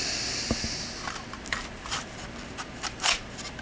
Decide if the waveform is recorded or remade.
recorded